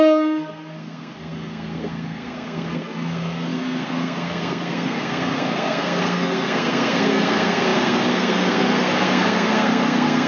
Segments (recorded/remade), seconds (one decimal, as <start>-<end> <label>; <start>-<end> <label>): 0.0-10.3 remade